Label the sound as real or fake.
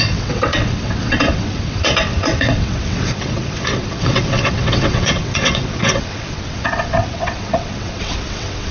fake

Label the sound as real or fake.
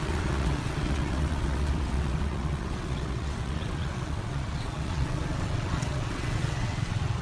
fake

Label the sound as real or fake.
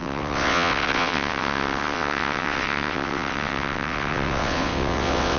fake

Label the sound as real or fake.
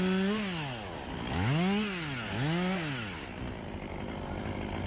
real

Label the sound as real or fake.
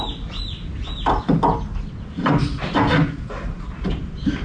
real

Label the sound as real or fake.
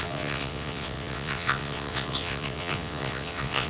fake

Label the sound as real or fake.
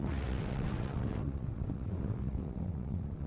fake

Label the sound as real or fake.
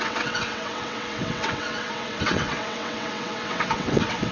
fake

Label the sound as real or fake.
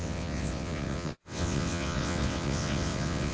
fake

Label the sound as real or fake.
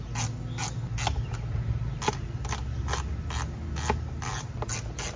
real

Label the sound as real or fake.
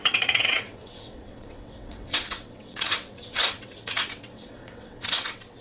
fake